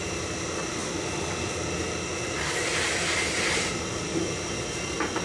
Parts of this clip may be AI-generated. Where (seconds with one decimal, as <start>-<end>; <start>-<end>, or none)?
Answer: none